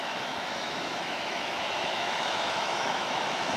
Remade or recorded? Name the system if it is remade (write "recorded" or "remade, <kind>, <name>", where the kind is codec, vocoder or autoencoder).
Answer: remade, autoencoder, DAC-VAE